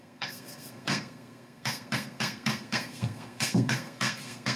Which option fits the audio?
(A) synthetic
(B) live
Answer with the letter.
A